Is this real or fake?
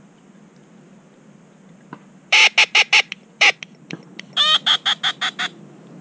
real